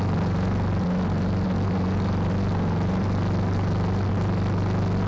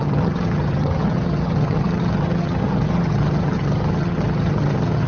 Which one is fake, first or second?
second